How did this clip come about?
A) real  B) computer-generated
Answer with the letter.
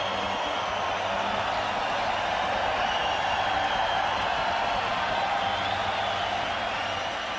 A